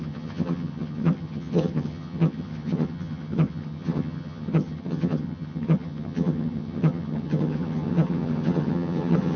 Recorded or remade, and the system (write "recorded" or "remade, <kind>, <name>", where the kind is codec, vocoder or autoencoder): remade, vocoder, HiFi-GAN